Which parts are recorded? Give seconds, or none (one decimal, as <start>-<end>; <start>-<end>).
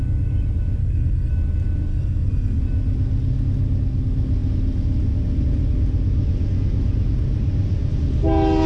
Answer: 0.0-0.8; 1.3-1.9; 2.6-8.7